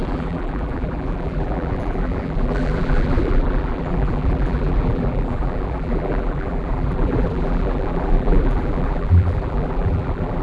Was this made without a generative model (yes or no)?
no